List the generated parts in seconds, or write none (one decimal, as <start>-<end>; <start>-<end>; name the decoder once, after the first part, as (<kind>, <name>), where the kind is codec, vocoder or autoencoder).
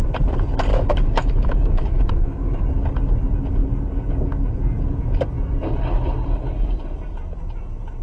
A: 0.7-2.6 (autoencoder, DAC-VAE)